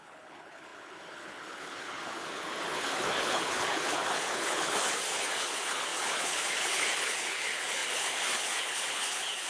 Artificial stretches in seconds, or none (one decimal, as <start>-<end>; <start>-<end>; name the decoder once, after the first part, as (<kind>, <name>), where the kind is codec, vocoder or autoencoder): 0.0-9.5 (codec, HILCodec)